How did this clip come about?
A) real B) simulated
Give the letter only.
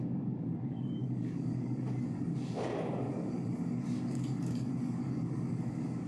B